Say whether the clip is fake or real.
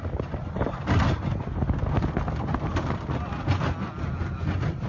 real